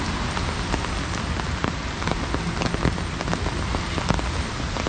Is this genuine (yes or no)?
yes